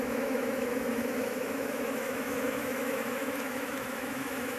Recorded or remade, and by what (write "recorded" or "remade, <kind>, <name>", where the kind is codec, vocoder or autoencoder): remade, autoencoder, DAC-VAE